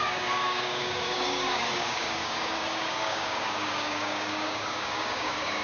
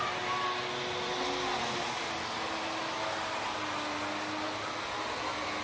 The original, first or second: second